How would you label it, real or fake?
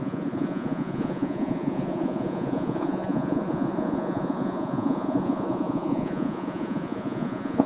fake